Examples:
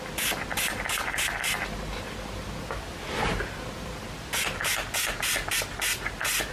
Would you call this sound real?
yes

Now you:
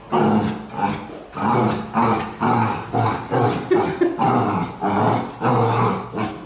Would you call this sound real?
yes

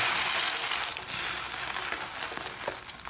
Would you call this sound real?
yes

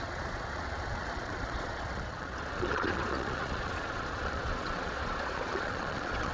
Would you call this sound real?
no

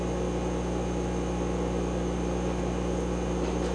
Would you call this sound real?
yes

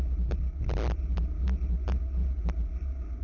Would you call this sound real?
yes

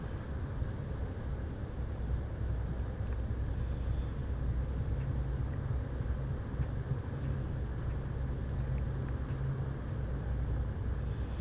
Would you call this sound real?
yes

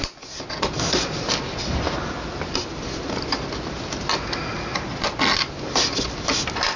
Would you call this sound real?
yes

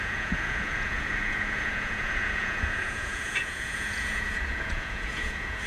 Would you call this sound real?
no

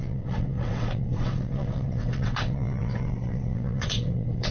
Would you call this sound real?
no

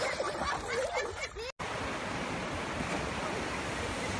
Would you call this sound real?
yes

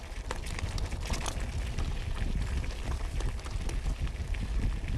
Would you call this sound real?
yes